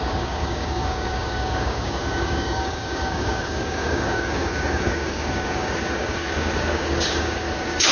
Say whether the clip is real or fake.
fake